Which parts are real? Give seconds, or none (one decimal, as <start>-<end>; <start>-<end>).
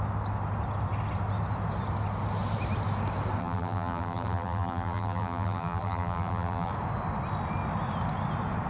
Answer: 0.0-3.4; 6.7-8.7